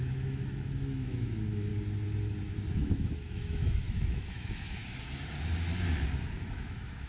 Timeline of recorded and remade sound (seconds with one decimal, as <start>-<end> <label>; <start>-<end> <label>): 0.0-1.7 remade; 1.7-2.7 recorded; 2.7-4.8 remade; 4.8-6.3 recorded; 6.3-7.1 remade